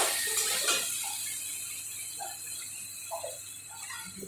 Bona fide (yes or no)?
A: yes